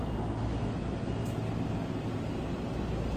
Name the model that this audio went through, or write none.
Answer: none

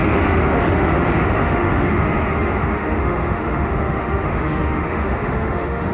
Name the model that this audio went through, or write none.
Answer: autoencoder, DAC-VAE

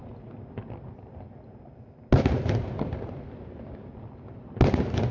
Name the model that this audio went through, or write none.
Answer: none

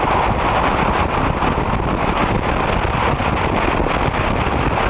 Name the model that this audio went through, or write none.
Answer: none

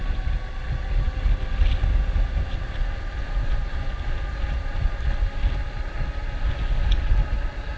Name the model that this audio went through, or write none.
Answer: none